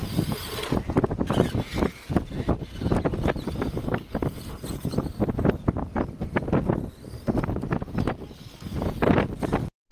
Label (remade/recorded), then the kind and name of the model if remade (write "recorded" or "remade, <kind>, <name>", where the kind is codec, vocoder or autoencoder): recorded